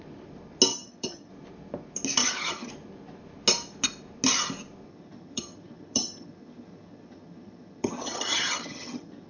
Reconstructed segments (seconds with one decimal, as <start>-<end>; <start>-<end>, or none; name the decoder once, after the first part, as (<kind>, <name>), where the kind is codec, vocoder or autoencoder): 0.7-1.3 (vocoder, HiFi-GAN); 2.2-2.7; 4.9-9.3